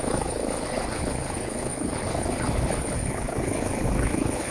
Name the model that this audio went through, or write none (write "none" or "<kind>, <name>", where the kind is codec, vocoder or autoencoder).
codec, HILCodec